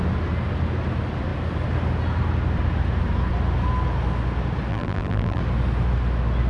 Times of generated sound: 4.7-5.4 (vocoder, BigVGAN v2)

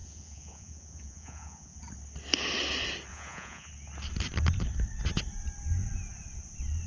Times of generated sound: 0.0-1.8 (vocoder, Vocos); 3.1-3.7

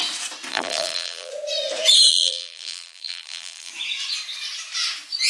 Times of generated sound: 0.5-1.3 (vocoder, BigVGAN v2); 2.1-3.7

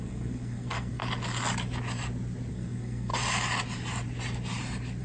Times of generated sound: 0.0-1.0 (codec, SNAC); 2.5-3.1

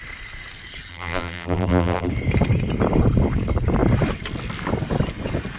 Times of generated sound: 0.9-2.1 (vocoder, BigVGAN v2)